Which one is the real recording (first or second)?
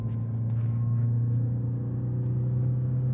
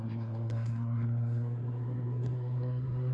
first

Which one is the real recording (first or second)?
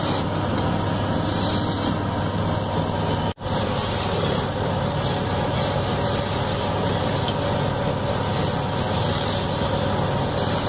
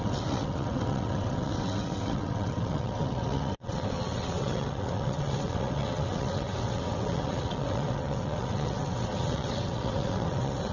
first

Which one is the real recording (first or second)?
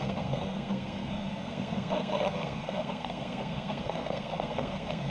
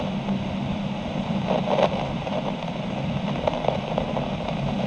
second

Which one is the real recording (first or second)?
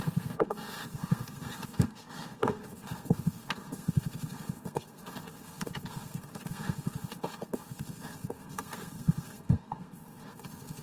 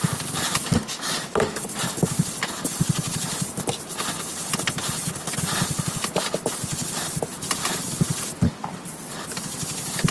second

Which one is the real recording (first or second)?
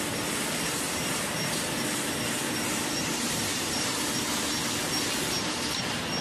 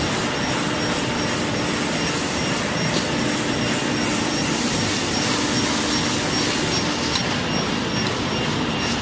second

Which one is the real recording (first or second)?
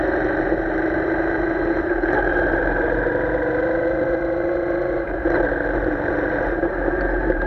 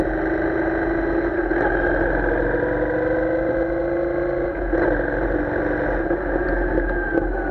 second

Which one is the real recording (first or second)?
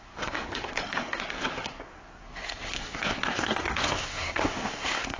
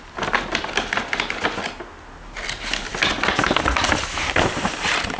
second